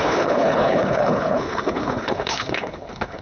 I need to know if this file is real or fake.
fake